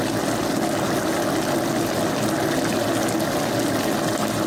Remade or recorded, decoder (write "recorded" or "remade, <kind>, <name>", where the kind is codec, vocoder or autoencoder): recorded